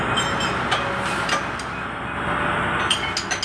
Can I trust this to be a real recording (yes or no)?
yes